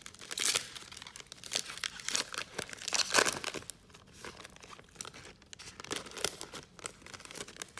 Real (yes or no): yes